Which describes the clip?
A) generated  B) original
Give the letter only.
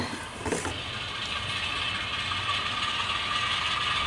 B